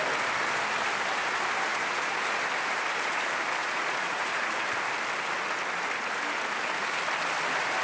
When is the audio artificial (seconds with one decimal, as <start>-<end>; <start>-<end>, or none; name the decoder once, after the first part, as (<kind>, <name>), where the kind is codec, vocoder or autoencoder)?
1.7-2.3 (vocoder, Vocos); 3.6-4.5